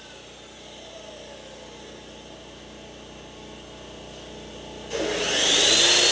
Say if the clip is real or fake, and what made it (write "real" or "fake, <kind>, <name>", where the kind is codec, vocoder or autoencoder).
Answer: real